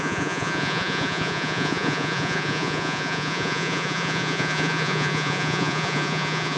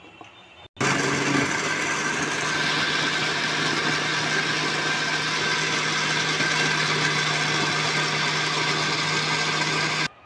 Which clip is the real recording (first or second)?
second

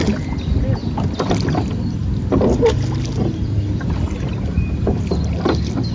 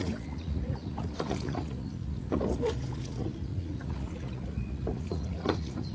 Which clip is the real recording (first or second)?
first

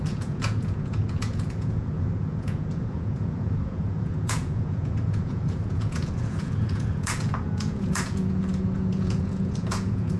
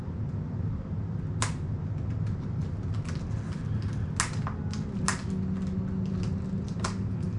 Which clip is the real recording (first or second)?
second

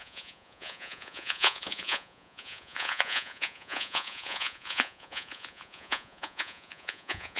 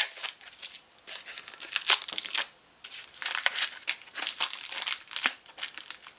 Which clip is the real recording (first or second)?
second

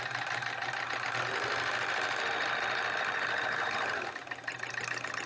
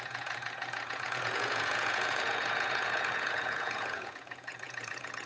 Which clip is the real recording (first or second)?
first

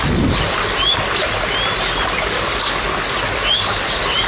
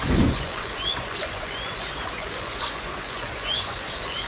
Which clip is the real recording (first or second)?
first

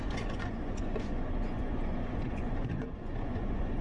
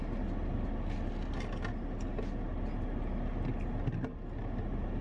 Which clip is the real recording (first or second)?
second